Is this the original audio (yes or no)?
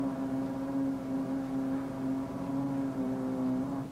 yes